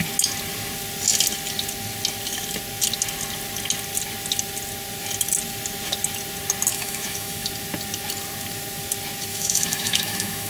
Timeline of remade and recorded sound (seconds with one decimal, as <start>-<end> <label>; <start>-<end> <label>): 0.0-6.7 recorded; 6.7-7.5 remade; 7.5-9.3 recorded; 9.3-10.5 remade